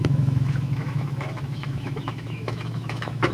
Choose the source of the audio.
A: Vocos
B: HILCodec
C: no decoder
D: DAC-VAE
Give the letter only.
D